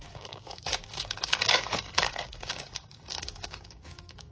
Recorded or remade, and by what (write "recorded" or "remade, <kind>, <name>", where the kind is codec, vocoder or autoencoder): remade, codec, DAC